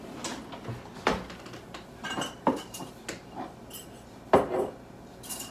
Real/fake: real